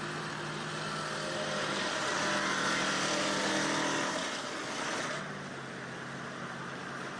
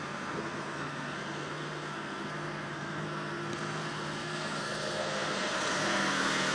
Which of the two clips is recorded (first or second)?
first